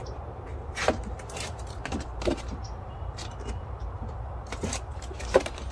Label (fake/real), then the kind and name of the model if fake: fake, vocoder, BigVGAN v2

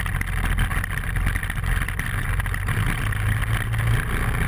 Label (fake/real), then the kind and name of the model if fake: real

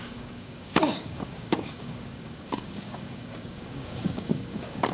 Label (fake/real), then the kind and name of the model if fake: fake, codec, DAC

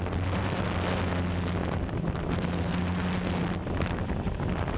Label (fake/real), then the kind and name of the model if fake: real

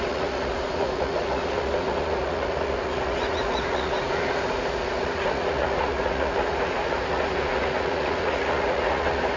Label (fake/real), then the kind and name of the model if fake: fake, vocoder, Vocos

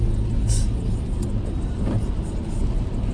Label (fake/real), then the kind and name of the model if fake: real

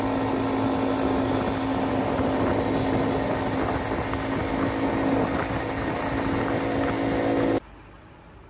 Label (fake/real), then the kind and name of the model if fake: real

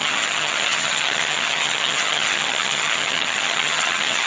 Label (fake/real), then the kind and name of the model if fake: fake, vocoder, HiFi-GAN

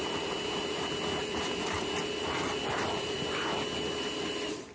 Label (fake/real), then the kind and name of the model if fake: real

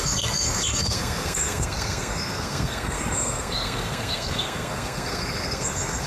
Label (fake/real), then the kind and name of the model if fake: fake, codec, SNAC